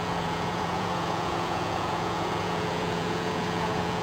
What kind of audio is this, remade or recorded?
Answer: remade